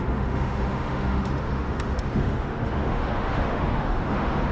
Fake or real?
fake